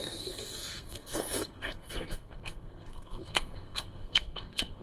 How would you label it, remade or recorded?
remade